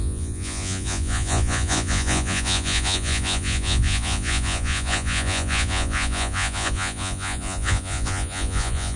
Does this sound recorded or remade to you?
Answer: remade